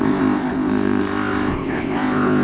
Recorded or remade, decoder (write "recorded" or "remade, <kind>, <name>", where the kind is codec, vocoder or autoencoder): remade, codec, ZipCodec